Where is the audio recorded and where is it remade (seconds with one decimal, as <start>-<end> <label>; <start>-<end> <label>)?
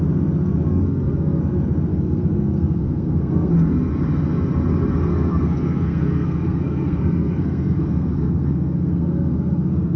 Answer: 0.0-0.7 recorded; 0.7-1.4 remade; 1.4-1.9 recorded; 1.9-3.5 remade; 3.5-5.1 recorded; 5.1-10.0 remade